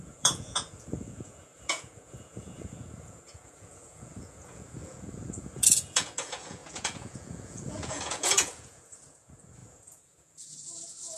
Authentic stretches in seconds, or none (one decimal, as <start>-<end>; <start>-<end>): none